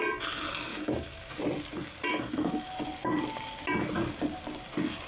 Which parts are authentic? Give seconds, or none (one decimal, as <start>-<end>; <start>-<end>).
0.0-0.7; 1.4-2.1; 2.7-5.1